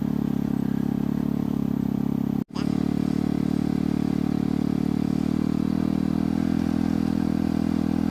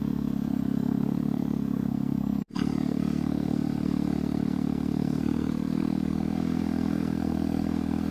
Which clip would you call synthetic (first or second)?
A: second